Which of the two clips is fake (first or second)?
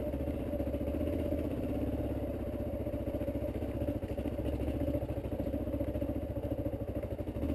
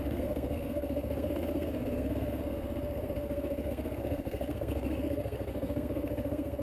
second